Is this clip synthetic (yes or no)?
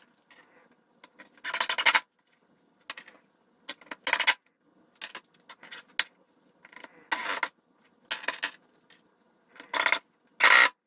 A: no